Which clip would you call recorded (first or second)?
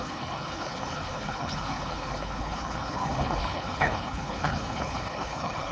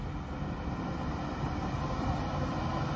second